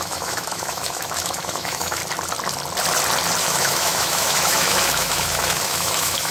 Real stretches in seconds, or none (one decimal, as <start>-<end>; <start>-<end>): 2.0-3.4